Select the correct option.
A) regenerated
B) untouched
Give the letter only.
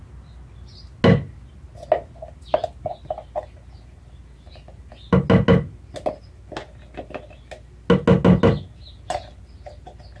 B